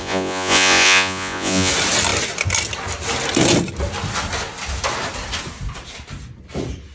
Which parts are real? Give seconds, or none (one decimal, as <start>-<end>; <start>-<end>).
1.7-6.9